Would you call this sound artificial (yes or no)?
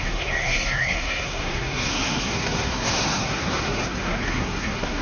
yes